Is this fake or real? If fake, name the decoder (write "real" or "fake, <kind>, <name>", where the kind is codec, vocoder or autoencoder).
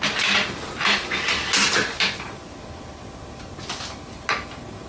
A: real